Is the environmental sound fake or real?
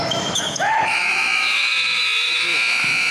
fake